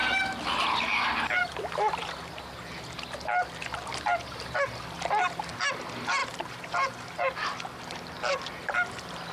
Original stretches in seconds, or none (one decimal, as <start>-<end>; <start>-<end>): 0.0-0.6; 1.4-3.9